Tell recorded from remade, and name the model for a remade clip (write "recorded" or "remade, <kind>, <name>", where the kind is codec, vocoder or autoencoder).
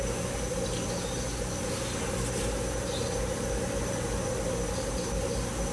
recorded